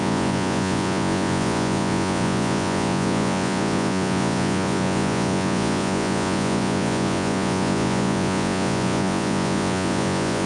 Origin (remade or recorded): remade